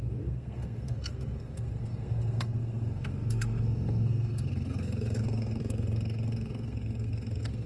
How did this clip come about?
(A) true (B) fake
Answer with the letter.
B